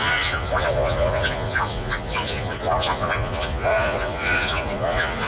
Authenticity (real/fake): fake